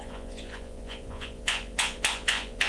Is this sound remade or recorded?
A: remade